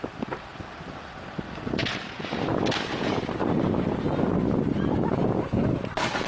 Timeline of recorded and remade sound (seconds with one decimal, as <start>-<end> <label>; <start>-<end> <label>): 0.0-1.8 remade; 1.8-4.7 recorded; 4.7-5.2 remade; 5.2-5.8 recorded; 5.8-6.3 remade